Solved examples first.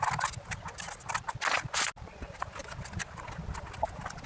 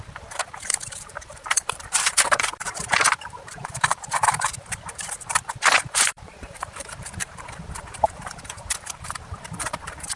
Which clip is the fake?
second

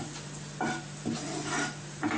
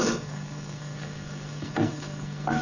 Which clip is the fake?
second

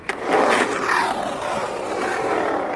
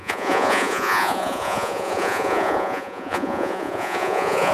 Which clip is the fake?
second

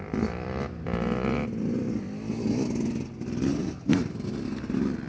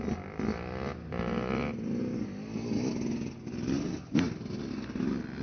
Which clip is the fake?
first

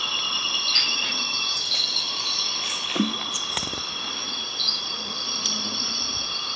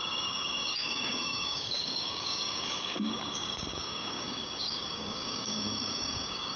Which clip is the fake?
second